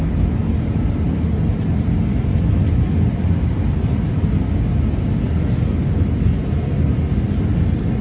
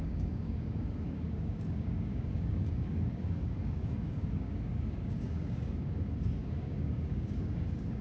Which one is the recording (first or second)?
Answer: first